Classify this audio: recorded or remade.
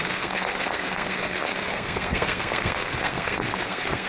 remade